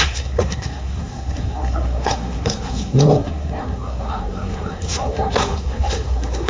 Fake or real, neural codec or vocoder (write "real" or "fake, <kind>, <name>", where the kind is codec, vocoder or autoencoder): fake, codec, SNAC